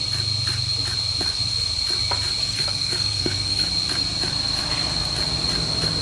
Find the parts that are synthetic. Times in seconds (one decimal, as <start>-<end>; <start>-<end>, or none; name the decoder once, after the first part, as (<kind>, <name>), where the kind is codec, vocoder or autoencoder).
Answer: 2.4-3.7 (codec, SNAC)